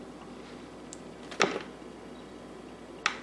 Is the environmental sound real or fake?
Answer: real